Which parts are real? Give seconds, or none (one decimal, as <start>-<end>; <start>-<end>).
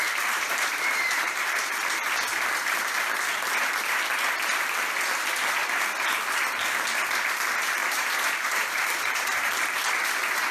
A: 1.8-7.8; 9.5-10.5